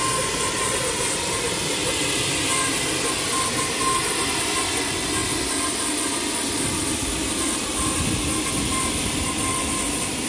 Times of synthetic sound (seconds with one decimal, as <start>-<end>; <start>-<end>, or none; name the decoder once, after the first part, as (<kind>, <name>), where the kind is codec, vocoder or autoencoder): none